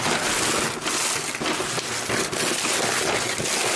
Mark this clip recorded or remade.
recorded